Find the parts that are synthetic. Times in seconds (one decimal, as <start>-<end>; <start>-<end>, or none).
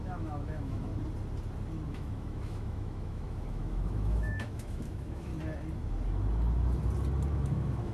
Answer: 0.0-0.9; 1.9-5.3; 7.3-7.9